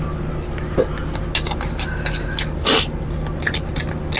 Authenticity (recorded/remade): recorded